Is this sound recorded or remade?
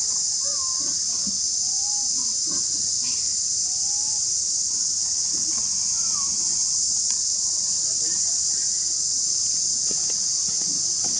recorded